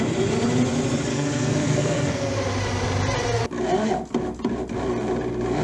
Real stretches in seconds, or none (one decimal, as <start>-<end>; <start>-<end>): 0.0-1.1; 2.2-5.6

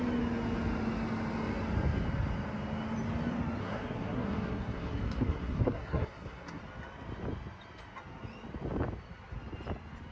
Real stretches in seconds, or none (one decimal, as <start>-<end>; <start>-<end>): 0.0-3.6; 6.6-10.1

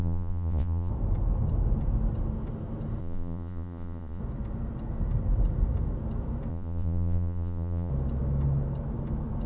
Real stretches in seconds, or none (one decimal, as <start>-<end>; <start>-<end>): 0.9-3.0; 4.2-6.5; 7.9-9.5